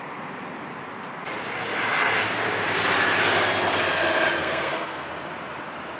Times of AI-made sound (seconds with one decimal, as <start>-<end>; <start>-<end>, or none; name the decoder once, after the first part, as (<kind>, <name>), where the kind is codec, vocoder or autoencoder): 4.4-5.1 (codec, SNAC)